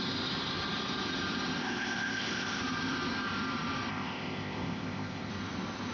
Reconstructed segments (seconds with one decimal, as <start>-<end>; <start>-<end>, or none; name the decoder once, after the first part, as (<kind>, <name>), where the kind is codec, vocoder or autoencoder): 1.6-2.6 (codec, ZipCodec); 3.9-5.3